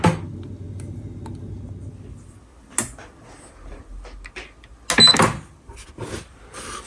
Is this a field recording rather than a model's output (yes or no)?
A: yes